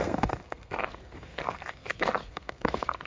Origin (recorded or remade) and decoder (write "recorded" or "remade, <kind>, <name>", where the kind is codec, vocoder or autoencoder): remade, codec, SNAC